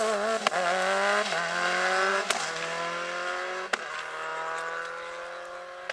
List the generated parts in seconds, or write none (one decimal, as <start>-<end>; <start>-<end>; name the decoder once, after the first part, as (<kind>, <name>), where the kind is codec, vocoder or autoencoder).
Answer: none